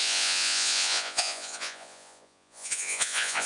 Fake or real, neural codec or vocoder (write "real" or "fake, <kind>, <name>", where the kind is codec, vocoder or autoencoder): fake, vocoder, Vocos